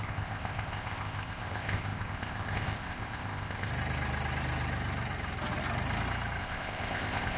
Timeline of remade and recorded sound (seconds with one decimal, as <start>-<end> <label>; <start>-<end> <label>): 0.0-3.7 remade; 3.7-6.4 recorded; 6.4-7.4 remade

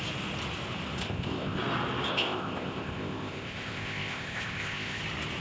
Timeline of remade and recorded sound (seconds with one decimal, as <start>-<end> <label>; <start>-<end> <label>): 0.0-1.0 recorded; 1.0-1.6 remade; 1.6-2.1 recorded; 2.1-5.0 remade; 5.0-5.4 recorded

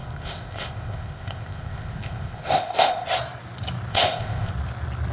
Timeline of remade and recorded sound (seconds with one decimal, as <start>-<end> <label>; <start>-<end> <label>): 0.0-3.1 remade; 3.1-3.9 recorded; 3.9-4.5 remade; 4.5-5.1 recorded

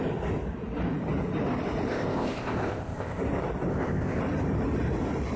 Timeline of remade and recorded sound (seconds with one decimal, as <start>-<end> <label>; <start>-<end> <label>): 0.0-1.9 recorded; 1.9-3.2 remade; 3.2-3.7 recorded; 3.7-4.2 remade; 4.2-5.4 recorded

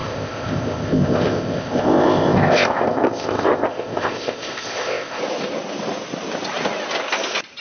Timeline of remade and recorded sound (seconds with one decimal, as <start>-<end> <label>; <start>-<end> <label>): 0.0-5.2 remade; 5.2-7.6 recorded